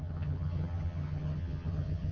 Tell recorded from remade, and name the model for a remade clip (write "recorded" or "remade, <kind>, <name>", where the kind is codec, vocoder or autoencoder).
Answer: remade, vocoder, HiFi-GAN